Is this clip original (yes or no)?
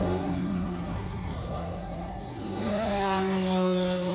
no